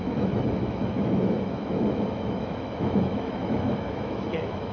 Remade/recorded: remade